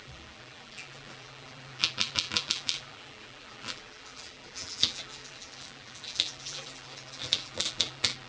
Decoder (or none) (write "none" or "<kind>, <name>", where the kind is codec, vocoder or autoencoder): vocoder, BigVGAN v2